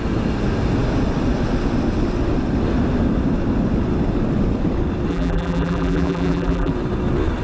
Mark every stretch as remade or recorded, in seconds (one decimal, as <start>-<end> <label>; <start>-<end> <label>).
0.0-5.1 recorded; 5.1-6.7 remade; 6.7-7.4 recorded

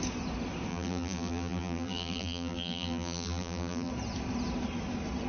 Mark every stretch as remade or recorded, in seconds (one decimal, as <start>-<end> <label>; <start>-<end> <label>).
0.0-0.7 recorded; 0.7-3.9 remade; 3.9-5.3 recorded

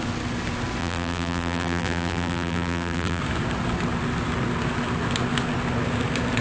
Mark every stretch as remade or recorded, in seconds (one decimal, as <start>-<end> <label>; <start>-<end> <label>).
0.0-0.8 recorded; 0.8-3.2 remade; 3.2-6.4 recorded

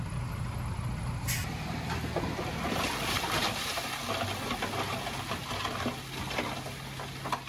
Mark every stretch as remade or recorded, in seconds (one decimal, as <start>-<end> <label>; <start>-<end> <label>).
0.0-1.4 recorded; 1.4-2.7 remade; 2.7-7.5 recorded

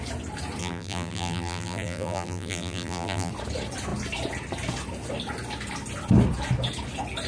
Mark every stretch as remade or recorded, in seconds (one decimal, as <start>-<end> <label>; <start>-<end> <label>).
0.0-0.6 recorded; 0.6-3.3 remade; 3.3-7.3 recorded